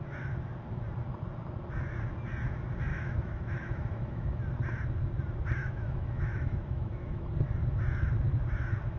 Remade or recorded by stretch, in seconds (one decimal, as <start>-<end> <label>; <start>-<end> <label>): 0.0-2.9 recorded; 2.9-4.4 remade; 4.4-5.6 recorded; 5.6-7.3 remade; 7.3-9.0 recorded